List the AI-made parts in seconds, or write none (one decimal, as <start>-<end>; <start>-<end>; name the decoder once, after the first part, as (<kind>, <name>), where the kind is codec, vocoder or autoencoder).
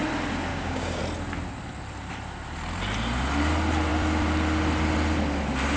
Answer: 0.5-1.0 (codec, DAC)